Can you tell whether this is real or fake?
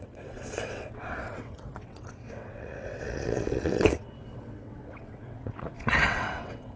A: fake